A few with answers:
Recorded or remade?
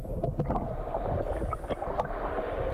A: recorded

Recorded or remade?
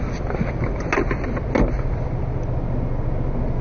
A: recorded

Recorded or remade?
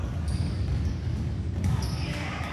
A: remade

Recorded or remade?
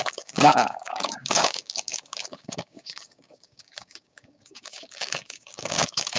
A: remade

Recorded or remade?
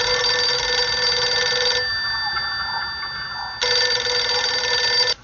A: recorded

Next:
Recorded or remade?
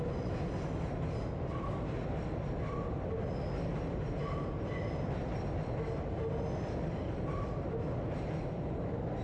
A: recorded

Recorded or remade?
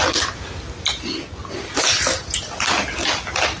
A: recorded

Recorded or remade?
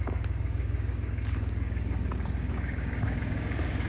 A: remade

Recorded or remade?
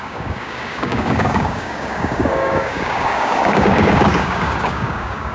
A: remade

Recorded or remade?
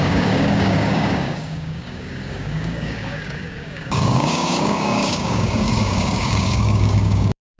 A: remade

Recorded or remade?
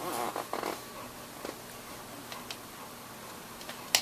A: recorded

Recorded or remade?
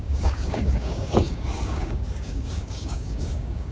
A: remade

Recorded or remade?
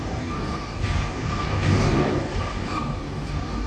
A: remade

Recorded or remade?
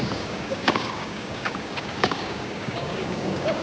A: remade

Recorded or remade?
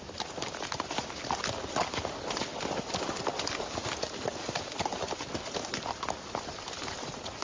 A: recorded